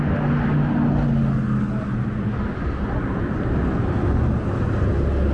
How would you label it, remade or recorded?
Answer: recorded